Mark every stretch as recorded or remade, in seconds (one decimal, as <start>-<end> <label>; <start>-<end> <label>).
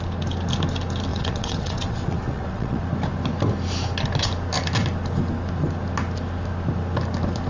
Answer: 0.0-1.1 recorded; 1.1-2.8 remade; 2.8-7.5 recorded